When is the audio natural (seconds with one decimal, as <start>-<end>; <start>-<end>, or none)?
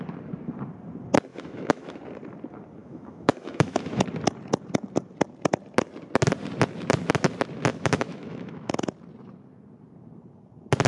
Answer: 0.0-1.3; 2.0-2.8; 4.0-7.7; 8.7-10.9